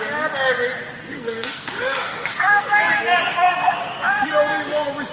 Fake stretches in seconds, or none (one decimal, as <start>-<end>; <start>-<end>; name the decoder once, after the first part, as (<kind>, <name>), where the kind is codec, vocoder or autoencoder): 1.1-2.8 (codec, SNAC); 3.2-4.3